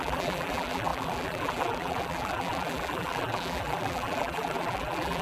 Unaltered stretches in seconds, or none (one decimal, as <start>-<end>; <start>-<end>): none